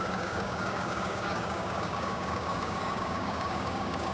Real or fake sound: fake